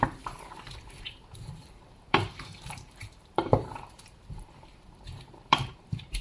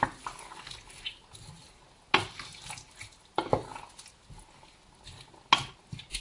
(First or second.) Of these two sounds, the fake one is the first